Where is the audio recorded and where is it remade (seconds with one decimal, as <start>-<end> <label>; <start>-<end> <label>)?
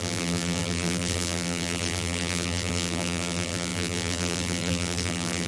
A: 0.0-5.5 remade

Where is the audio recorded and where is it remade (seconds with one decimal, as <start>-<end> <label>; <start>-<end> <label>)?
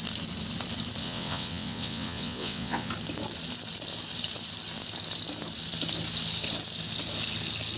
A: 0.0-1.0 recorded; 1.0-2.9 remade; 2.9-7.8 recorded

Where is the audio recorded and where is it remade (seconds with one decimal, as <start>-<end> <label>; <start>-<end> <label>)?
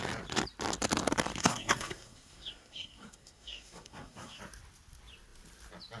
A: 0.0-1.4 recorded; 1.4-4.4 remade; 4.4-6.0 recorded